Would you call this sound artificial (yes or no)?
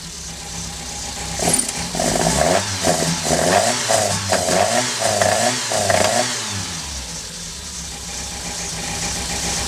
no